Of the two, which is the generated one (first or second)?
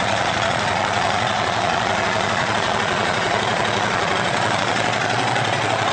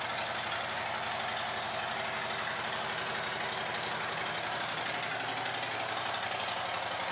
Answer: first